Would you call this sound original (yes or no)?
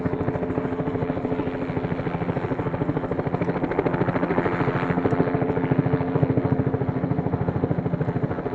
yes